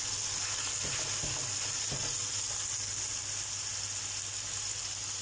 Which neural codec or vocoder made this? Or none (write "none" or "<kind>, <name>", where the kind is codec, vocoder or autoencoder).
none